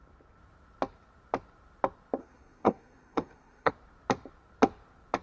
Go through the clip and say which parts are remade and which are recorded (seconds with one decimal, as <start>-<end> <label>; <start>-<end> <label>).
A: 0.0-2.2 recorded; 2.2-3.7 remade; 3.7-5.2 recorded